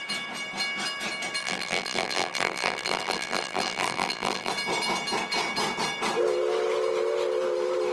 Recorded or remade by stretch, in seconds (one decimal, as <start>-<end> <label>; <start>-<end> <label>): 0.0-1.4 recorded; 1.4-4.5 remade; 4.5-7.9 recorded